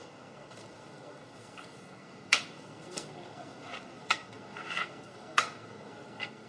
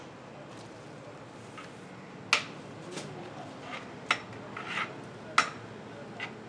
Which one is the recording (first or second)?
second